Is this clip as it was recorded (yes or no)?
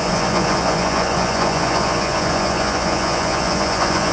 no